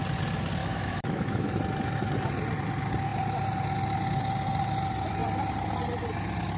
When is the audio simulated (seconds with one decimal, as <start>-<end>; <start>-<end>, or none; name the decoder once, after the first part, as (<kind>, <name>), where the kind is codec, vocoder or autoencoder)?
0.6-1.6 (autoencoder, DAC-VAE)